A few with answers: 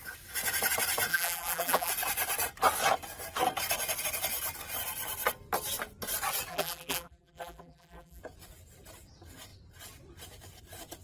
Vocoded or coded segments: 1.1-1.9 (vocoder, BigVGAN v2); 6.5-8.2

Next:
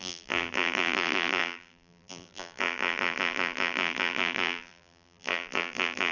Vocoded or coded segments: 0.0-6.1 (vocoder, BigVGAN v2)

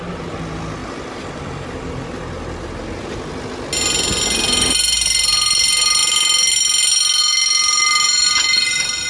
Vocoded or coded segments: 0.8-2.7 (vocoder, BigVGAN v2)